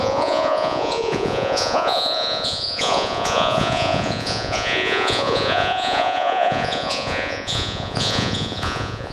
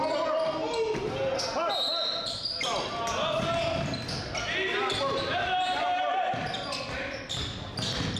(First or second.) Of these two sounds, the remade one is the first